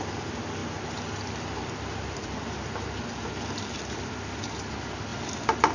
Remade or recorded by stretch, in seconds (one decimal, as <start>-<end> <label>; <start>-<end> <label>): 0.0-0.6 recorded; 0.6-4.0 remade; 4.0-5.1 recorded; 5.1-5.7 remade